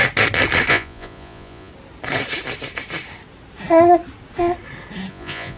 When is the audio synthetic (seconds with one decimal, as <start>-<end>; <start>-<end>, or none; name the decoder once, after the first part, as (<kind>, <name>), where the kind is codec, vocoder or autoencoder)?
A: 0.7-1.7 (vocoder, Vocos); 5.1-5.6